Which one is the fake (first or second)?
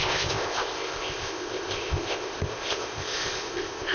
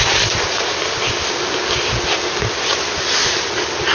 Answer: first